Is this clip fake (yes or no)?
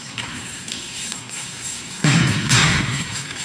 yes